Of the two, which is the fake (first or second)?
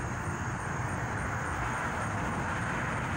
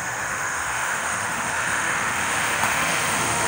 second